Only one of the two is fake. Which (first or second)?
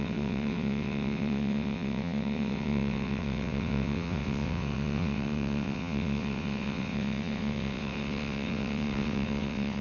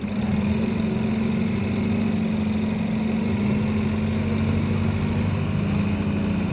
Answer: first